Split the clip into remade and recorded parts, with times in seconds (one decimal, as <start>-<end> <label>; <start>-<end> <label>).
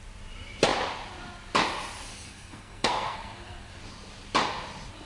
0.0-2.1 recorded; 2.1-3.8 remade; 3.8-5.1 recorded